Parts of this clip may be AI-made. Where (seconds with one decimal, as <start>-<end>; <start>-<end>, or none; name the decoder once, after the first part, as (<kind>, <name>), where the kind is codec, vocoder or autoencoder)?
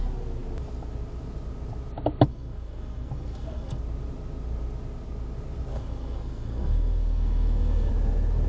2.3-3.8 (codec, SNAC); 5.7-7.9